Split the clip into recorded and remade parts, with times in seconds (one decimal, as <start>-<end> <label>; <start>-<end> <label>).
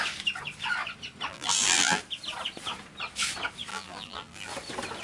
0.0-1.3 recorded; 1.3-2.0 remade; 2.0-3.7 recorded; 3.7-4.5 remade; 4.5-5.0 recorded